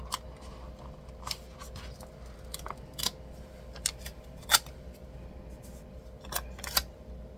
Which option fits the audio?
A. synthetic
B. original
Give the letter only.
B